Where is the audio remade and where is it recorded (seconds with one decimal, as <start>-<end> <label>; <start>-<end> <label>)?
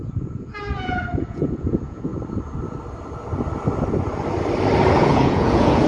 0.0-2.1 remade; 2.1-4.9 recorded; 4.9-5.9 remade